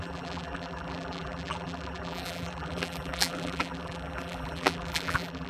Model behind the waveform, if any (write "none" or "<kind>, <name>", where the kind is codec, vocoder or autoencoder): vocoder, BigVGAN v2